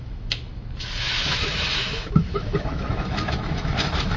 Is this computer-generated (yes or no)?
yes